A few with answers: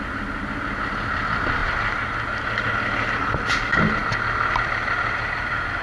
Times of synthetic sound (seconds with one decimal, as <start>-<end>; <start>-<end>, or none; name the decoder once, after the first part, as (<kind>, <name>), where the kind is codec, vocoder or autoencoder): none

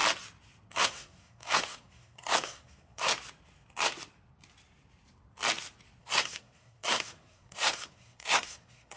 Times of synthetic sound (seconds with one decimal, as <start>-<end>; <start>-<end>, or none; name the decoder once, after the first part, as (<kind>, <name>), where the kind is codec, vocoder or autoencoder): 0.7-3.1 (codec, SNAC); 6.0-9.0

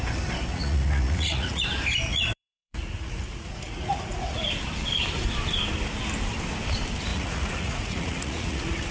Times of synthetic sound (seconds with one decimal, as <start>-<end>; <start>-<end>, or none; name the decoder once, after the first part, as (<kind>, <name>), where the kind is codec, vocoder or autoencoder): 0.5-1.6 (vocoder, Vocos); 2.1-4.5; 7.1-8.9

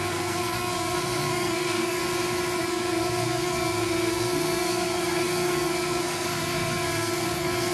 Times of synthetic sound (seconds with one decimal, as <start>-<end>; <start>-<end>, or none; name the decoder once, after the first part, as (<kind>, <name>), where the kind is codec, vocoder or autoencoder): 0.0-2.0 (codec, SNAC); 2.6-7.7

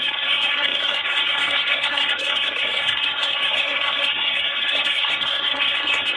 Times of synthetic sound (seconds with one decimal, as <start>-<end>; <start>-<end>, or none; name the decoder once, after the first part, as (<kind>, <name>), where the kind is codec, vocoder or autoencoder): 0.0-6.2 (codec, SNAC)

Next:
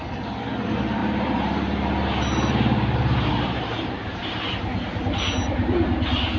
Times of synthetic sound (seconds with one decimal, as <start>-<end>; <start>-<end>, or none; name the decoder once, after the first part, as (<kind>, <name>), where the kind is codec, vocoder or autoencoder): 1.0-4.5 (vocoder, BigVGAN v2)

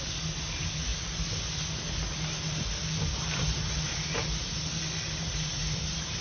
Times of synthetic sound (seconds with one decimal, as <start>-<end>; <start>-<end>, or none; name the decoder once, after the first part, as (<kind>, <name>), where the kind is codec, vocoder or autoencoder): none

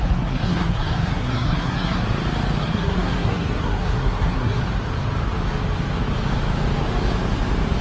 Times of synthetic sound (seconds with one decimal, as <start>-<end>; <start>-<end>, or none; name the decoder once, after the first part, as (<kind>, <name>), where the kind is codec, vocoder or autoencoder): 0.0-2.0 (codec, SNAC); 2.6-4.6